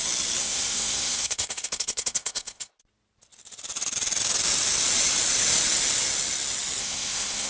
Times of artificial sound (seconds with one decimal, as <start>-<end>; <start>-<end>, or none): 0.4-2.7; 6.8-7.5